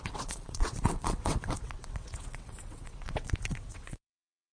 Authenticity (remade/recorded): remade